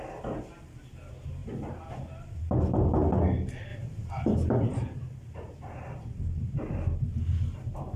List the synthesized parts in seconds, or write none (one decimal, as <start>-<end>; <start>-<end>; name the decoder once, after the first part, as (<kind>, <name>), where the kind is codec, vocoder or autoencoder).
1.4-2.4 (vocoder, BigVGAN v2)